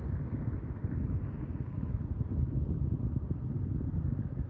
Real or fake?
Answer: real